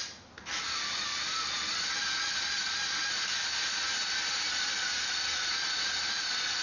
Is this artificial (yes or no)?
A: no